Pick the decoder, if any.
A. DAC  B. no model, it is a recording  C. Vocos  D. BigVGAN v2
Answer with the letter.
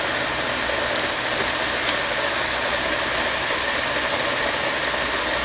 B